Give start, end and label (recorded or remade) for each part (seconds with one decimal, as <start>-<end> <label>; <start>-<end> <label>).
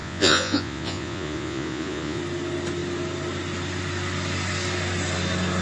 0.0-2.2 remade; 2.2-5.6 recorded